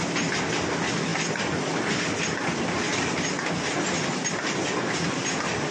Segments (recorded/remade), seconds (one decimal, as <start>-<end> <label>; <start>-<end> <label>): 0.0-5.7 recorded